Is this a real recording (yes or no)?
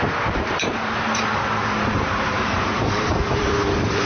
no